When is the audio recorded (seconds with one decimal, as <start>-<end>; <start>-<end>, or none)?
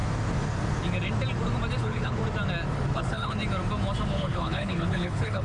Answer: 0.0-1.8; 2.2-2.9; 3.4-4.1